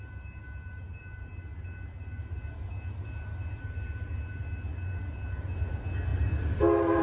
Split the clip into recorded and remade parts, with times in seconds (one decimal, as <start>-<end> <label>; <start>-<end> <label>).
0.0-7.0 recorded